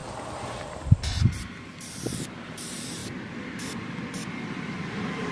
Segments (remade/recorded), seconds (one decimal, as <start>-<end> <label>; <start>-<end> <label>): 0.0-2.6 remade; 2.6-5.3 recorded